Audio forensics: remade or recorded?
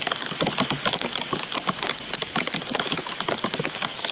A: recorded